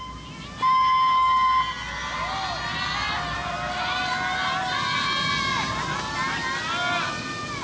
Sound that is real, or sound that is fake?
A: real